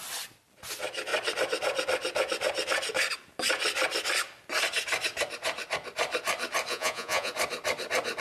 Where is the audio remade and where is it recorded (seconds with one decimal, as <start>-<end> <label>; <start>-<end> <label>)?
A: 0.0-6.7 recorded; 6.7-7.3 remade; 7.3-8.2 recorded

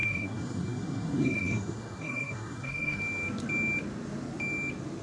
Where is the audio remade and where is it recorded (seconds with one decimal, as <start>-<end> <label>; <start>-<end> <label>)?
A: 0.0-3.0 remade; 3.0-5.0 recorded

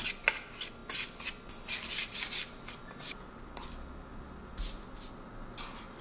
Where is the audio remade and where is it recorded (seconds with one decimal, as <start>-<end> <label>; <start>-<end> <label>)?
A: 0.0-6.0 recorded

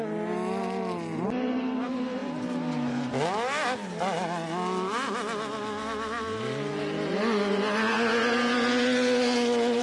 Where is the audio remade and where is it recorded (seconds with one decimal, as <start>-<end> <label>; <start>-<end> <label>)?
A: 0.0-9.8 recorded

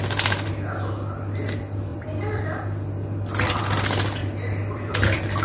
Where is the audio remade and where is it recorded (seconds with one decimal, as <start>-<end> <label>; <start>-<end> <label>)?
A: 0.0-1.9 recorded; 1.9-2.6 remade; 2.6-4.2 recorded; 4.2-5.0 remade; 5.0-5.4 recorded

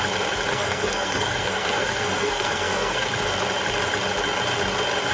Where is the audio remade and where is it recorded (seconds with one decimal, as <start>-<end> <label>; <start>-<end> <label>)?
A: 0.0-0.5 recorded; 0.5-3.1 remade; 3.1-5.1 recorded